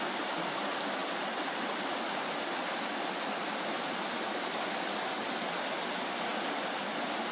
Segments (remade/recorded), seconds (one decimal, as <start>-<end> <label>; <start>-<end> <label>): 0.0-7.3 recorded